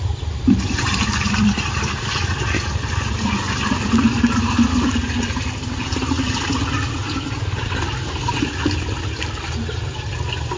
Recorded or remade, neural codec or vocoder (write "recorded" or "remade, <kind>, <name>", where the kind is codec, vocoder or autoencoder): recorded